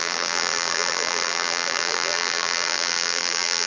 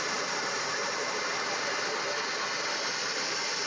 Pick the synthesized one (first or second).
first